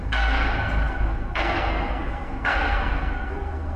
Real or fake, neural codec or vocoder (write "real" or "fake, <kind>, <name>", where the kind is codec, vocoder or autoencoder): fake, codec, SNAC